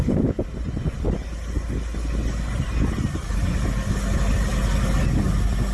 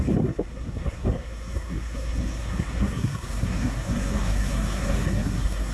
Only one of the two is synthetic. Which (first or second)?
second